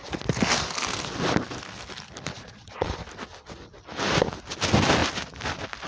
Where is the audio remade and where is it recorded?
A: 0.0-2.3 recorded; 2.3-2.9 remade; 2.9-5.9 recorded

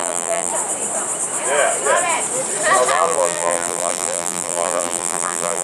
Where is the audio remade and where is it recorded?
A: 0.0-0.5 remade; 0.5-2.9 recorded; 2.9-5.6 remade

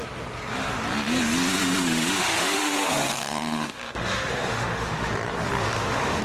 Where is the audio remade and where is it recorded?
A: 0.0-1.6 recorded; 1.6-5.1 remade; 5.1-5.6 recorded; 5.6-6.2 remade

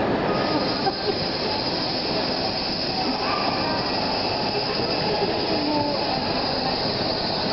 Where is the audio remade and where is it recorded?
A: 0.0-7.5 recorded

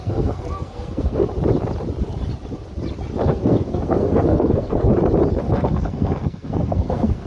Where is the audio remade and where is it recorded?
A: 0.0-1.2 remade; 1.2-3.2 recorded; 3.2-4.9 remade; 4.9-5.4 recorded; 5.4-7.3 remade